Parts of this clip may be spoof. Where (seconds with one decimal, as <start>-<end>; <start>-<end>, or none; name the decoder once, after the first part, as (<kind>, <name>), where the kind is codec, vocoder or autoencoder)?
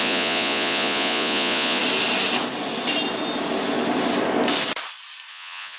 0.0-1.8 (vocoder, Vocos); 5.3-5.8